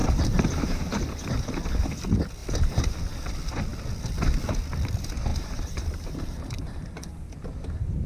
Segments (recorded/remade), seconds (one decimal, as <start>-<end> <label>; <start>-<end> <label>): 0.0-0.8 remade; 0.8-5.3 recorded; 5.3-7.1 remade; 7.1-8.1 recorded